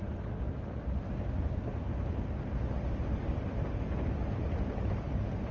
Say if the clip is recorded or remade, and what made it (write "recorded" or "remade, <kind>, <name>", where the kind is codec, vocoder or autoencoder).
recorded